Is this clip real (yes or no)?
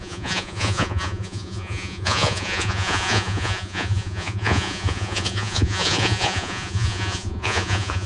no